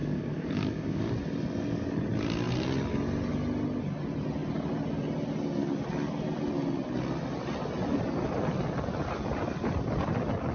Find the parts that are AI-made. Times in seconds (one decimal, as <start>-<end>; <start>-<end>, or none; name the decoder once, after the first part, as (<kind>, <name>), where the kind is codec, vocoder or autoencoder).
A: 0.0-1.1 (codec, DAC)